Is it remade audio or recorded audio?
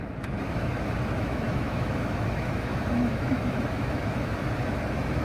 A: remade